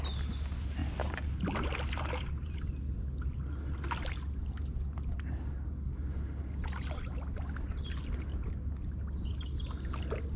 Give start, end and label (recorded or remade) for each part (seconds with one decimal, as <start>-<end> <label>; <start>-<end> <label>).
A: 0.0-0.8 recorded; 0.8-3.0 remade; 3.0-10.4 recorded